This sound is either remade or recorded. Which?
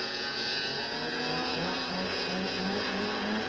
remade